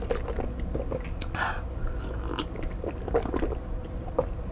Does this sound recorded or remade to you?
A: recorded